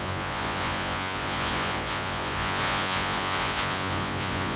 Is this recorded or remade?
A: remade